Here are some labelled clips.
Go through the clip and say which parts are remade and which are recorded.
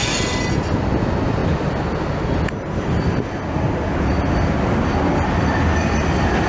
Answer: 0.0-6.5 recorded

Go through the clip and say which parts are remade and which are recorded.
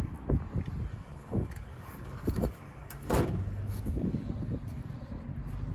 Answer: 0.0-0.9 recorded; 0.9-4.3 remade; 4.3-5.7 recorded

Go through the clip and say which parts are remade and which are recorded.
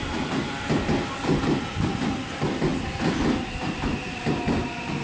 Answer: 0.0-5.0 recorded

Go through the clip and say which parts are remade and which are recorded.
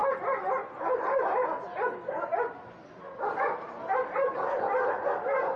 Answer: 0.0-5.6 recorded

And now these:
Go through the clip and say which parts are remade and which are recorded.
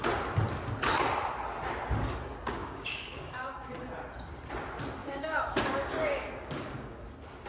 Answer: 0.0-2.6 recorded; 2.6-3.7 remade; 3.7-5.0 recorded; 5.0-7.1 remade; 7.1-7.5 recorded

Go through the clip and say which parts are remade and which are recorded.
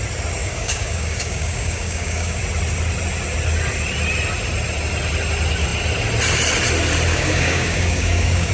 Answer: 0.0-0.4 recorded; 0.4-2.4 remade; 2.4-7.1 recorded; 7.1-8.5 remade